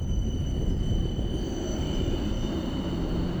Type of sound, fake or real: real